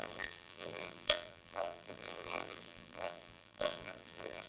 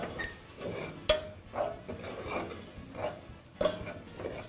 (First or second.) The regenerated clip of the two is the first